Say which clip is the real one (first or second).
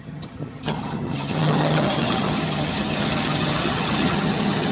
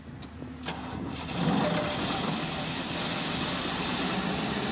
second